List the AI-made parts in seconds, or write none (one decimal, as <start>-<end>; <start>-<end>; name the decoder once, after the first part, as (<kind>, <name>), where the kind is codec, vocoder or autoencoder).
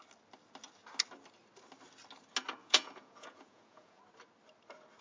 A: 2.6-4.0 (vocoder, Vocos)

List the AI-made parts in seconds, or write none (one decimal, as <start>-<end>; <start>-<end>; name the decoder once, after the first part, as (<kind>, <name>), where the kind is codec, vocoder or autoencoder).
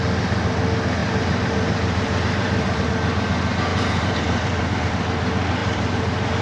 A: 1.0-2.9 (vocoder, BigVGAN v2); 3.7-4.9; 5.6-6.4